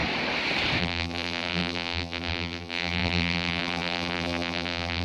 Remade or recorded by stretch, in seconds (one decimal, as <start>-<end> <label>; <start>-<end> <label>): 0.0-0.8 recorded; 0.8-5.0 remade